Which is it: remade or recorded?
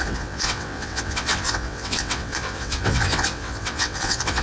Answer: remade